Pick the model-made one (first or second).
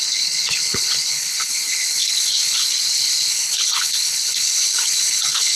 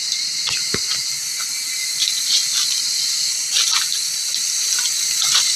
first